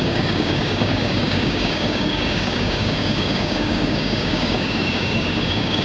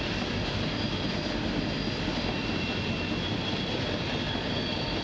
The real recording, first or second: second